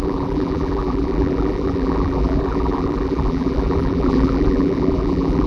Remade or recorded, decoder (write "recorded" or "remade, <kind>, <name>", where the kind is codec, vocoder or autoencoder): remade, vocoder, BigVGAN v2